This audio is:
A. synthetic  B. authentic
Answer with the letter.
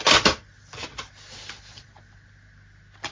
B